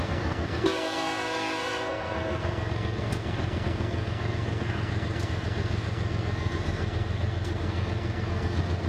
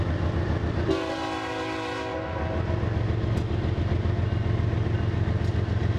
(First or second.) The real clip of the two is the second